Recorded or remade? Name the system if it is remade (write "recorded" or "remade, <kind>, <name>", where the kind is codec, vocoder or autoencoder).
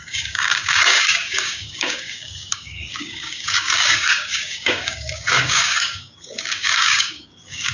remade, codec, DAC